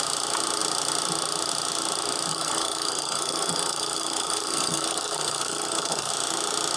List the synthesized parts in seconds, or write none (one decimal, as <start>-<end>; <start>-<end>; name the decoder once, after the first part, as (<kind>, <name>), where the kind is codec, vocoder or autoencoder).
2.3-6.1 (codec, SNAC)